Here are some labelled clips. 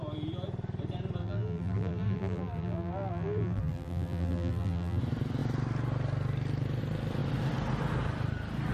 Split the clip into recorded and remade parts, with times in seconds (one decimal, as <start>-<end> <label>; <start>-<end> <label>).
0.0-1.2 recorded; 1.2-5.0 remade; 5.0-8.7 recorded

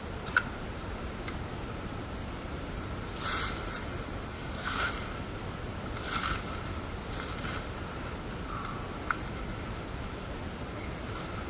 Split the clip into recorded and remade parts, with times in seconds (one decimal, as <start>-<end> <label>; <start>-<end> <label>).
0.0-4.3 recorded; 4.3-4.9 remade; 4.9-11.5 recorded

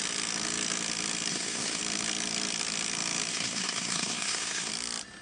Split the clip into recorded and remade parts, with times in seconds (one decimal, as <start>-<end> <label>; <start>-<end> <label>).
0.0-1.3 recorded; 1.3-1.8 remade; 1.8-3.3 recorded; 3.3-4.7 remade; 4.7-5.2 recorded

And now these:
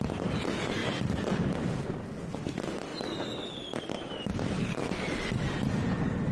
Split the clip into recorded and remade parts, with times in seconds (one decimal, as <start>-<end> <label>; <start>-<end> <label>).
0.0-2.9 recorded; 2.9-4.6 remade; 4.6-6.3 recorded